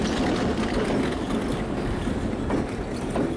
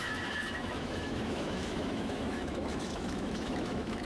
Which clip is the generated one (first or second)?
second